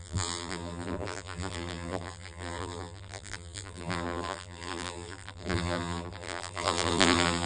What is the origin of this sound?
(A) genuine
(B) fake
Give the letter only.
B